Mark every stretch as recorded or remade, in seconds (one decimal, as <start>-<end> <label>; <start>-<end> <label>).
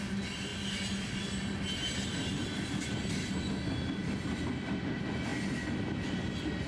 0.0-6.7 recorded